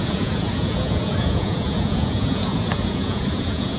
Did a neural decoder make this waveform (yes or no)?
yes